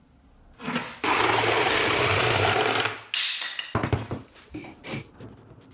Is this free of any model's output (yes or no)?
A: yes